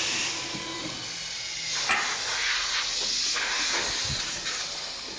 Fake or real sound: real